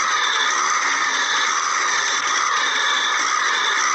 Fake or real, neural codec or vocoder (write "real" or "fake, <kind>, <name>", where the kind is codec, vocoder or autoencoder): real